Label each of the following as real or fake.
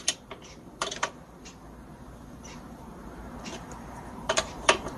fake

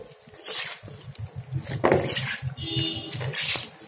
real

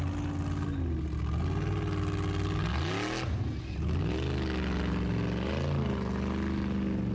real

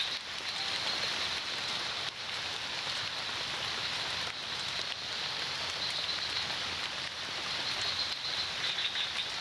fake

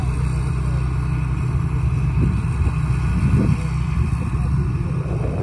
real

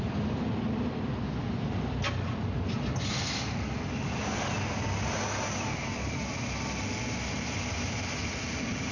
real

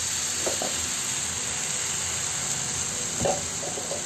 real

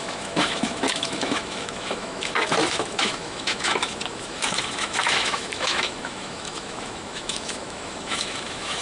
fake